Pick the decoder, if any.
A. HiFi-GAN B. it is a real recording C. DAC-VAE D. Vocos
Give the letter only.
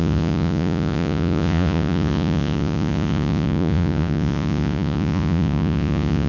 D